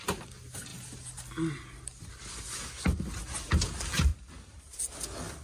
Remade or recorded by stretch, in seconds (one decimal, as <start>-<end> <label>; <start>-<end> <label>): 0.0-4.1 recorded; 4.1-4.8 remade; 4.8-5.4 recorded